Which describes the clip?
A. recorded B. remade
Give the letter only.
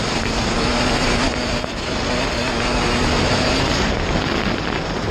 A